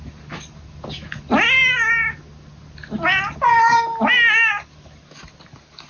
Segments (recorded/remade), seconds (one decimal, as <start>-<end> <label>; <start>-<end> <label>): 0.0-5.9 recorded